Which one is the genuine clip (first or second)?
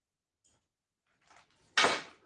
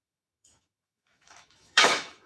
first